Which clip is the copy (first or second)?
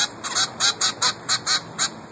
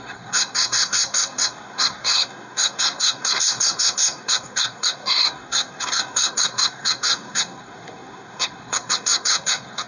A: second